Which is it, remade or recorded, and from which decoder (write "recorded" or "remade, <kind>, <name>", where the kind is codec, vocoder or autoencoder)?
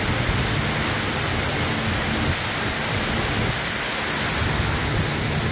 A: recorded